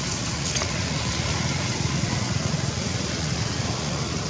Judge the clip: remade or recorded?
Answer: remade